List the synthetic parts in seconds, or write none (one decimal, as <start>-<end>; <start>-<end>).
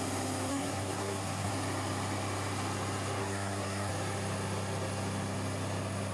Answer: 0.5-1.5; 3.2-3.9